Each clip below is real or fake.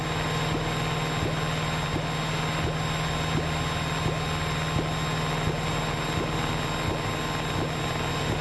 real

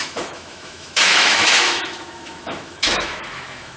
fake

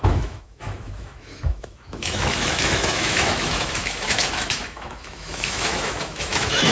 fake